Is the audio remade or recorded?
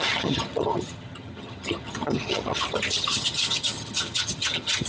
remade